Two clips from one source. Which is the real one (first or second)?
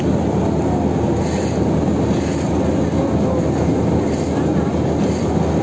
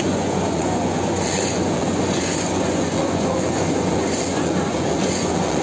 first